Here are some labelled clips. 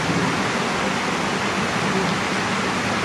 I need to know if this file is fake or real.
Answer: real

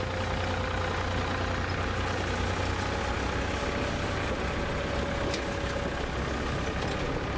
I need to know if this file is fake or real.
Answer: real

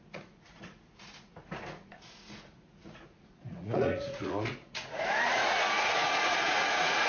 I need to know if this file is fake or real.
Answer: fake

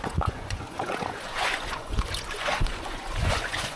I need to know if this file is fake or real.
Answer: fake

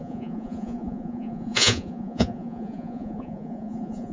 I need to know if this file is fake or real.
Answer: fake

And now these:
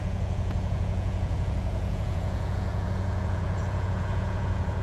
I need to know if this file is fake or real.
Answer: fake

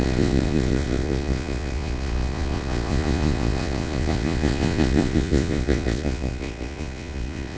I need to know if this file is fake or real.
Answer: fake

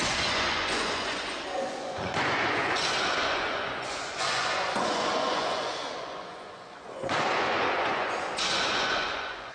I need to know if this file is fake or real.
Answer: fake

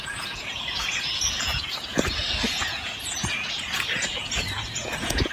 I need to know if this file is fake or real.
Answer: fake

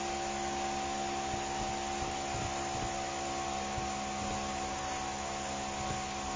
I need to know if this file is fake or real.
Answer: real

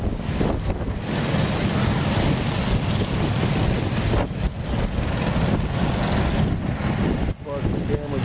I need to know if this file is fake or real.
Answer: real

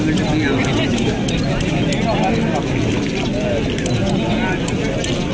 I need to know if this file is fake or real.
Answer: real